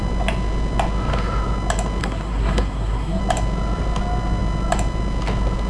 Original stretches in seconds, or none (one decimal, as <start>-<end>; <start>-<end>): 0.0-2.0; 3.2-5.7